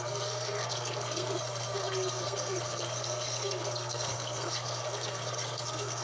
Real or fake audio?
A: fake